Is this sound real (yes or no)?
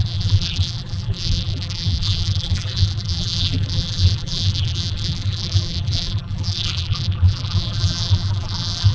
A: no